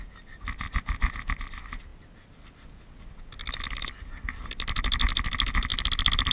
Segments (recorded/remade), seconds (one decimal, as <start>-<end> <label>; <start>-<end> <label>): 0.0-6.3 recorded